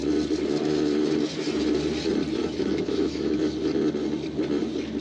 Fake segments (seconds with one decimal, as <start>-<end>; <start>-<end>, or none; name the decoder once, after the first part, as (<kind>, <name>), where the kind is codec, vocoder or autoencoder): 2.4-3.4 (autoencoder, DAC-VAE)